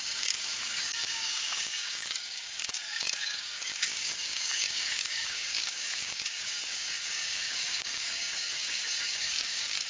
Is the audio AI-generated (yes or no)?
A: yes